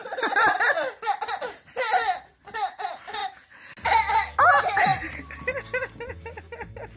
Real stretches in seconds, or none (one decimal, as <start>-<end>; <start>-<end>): 0.0-7.0